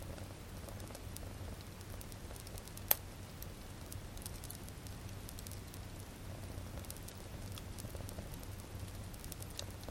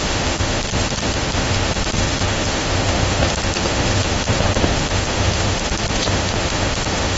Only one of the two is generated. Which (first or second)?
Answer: second